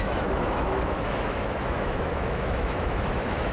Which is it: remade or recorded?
remade